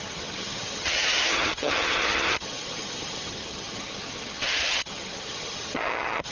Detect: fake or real fake